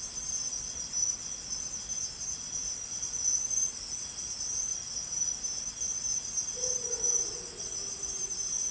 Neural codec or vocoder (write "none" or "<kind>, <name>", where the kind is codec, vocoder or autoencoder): none